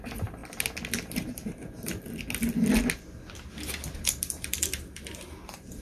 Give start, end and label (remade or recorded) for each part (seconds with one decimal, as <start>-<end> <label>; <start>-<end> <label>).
0.0-0.4 remade; 0.4-3.9 recorded; 3.9-5.8 remade